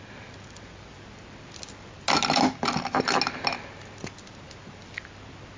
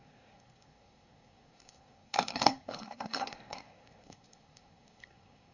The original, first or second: first